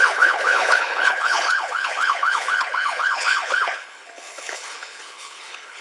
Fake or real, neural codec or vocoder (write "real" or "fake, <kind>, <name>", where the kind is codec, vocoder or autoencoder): fake, codec, HILCodec